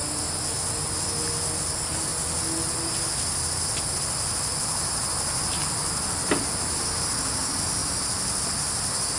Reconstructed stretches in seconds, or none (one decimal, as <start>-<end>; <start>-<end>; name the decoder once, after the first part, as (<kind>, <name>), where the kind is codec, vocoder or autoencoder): none